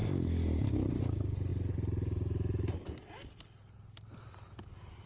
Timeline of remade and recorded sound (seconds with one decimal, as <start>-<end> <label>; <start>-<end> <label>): 0.0-5.1 recorded